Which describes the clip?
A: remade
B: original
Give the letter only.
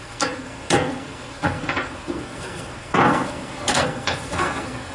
A